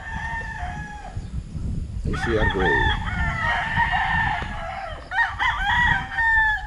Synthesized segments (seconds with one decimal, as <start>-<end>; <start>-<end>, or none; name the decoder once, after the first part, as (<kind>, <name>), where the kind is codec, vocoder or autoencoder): 5.9-6.7 (codec, SNAC)